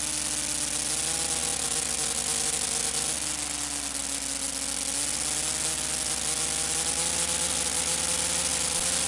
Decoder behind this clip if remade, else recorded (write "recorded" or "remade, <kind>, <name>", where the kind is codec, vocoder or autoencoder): recorded